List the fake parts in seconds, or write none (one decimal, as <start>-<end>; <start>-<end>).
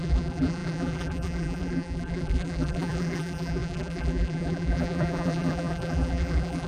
0.0-6.7